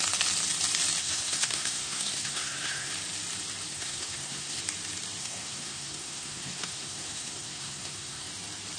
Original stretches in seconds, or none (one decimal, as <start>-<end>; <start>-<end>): 0.0-1.0; 2.9-3.7; 4.6-5.2; 8.3-8.8